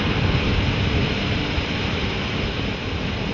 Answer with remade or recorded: recorded